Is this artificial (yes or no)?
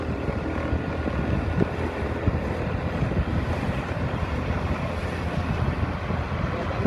no